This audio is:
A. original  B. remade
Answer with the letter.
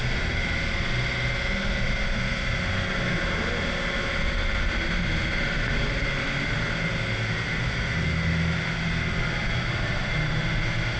A